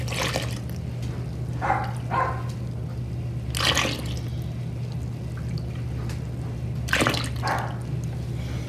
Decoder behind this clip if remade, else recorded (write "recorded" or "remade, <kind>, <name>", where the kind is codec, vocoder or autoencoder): recorded